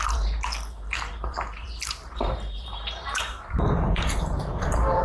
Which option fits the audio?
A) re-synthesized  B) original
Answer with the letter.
A